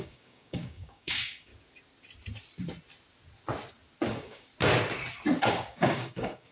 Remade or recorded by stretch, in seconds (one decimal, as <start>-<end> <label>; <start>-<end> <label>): 0.0-1.5 remade; 1.5-4.1 recorded; 4.1-4.5 remade; 4.5-5.4 recorded; 5.4-6.5 remade